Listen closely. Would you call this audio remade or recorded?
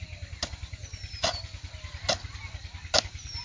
recorded